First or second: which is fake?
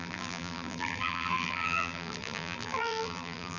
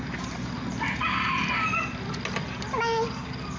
first